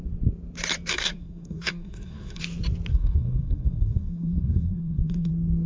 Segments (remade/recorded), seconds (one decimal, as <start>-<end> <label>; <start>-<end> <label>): 0.0-0.9 recorded; 0.9-2.4 remade; 2.4-2.9 recorded; 2.9-5.3 remade; 5.3-5.7 recorded